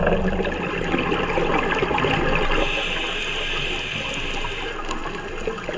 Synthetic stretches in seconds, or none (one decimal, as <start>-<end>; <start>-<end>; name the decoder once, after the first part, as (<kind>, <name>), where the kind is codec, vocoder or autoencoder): none